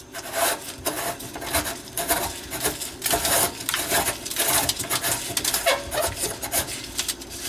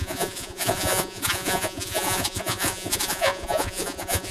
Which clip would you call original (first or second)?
first